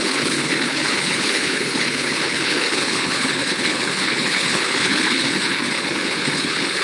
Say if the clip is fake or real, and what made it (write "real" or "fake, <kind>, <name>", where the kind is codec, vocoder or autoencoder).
fake, codec, HILCodec